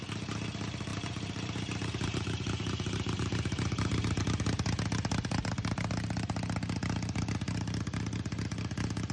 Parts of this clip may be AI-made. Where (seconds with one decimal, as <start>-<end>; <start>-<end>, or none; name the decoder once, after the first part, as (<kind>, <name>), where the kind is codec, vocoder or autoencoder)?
0.9-4.2 (vocoder, BigVGAN v2)